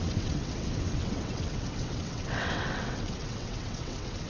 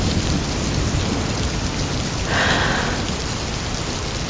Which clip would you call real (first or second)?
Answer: second